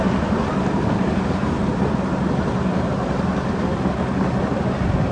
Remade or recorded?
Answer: recorded